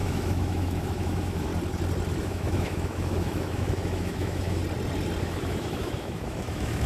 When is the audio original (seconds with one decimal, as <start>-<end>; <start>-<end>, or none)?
1.5-2.2; 4.6-5.2